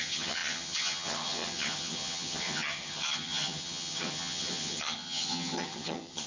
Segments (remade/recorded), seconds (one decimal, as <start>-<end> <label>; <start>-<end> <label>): 0.0-6.3 remade